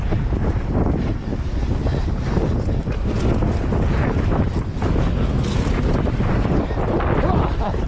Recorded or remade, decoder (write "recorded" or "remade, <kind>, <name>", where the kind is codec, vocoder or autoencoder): recorded